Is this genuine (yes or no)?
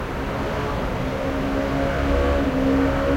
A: yes